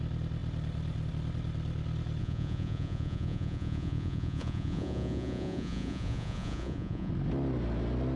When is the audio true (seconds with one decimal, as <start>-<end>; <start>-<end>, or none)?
0.0-2.2; 7.1-8.2